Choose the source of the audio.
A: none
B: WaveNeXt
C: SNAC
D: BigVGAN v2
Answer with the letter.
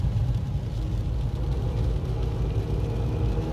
A